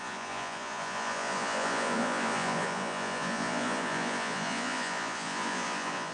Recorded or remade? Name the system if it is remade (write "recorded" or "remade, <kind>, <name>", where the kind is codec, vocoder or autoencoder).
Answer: remade, vocoder, Vocos